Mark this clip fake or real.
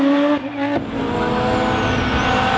real